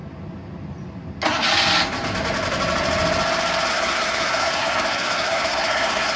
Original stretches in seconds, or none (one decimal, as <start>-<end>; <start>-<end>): 0.0-3.7